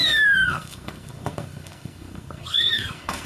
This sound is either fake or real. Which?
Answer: fake